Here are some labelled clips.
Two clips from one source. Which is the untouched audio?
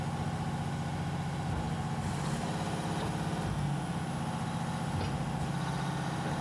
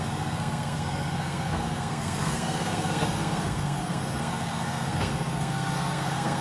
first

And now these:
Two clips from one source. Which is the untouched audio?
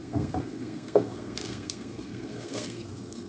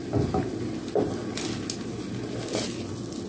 second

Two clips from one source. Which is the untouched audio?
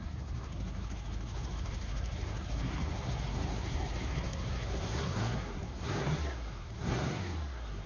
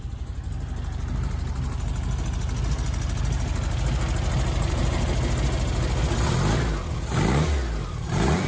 second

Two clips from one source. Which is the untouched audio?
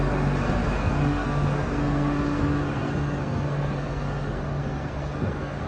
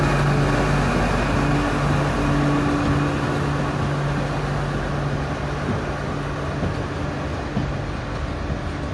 second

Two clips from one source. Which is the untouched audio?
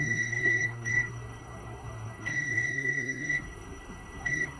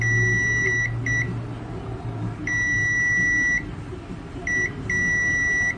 second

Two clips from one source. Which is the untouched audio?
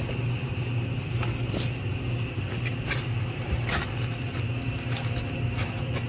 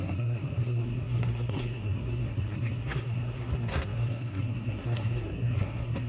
first